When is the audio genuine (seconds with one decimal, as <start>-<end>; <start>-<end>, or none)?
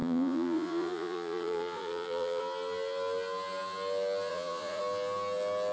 2.4-4.3; 4.8-5.7